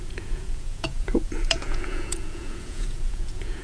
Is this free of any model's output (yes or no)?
no